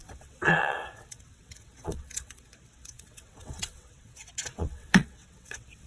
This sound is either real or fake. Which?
fake